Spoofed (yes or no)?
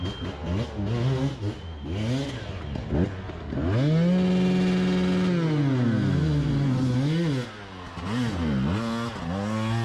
no